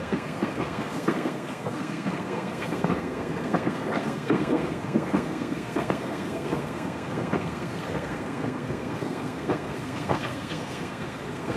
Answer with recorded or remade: remade